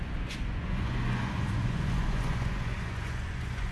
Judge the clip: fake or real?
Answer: fake